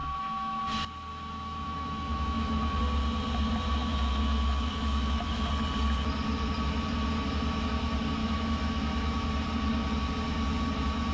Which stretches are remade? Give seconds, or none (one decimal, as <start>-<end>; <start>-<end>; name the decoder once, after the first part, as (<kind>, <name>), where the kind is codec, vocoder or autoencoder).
0.0-0.6 (autoencoder, DAC-VAE); 1.1-2.8; 3.8-5.5; 8.2-9.2